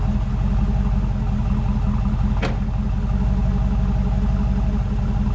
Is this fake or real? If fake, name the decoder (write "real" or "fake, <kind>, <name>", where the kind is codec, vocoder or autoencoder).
real